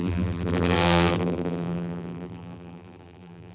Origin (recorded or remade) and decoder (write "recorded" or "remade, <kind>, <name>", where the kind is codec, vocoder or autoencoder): remade, vocoder, BigVGAN v2